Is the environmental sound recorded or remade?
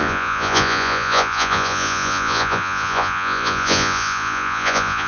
remade